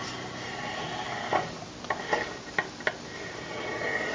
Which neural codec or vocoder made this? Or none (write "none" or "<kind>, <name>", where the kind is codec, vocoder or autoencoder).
none